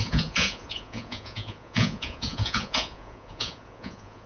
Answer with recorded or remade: remade